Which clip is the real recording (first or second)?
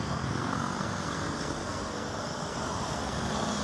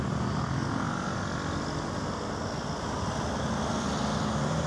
second